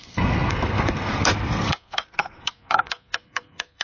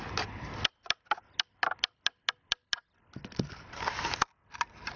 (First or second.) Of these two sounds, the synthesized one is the first